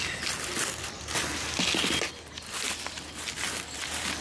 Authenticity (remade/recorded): recorded